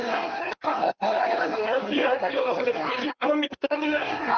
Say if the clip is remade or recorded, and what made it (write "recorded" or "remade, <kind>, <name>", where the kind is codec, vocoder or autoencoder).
remade, codec, SNAC